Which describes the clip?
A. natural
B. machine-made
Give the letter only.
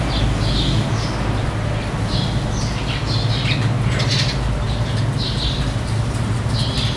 A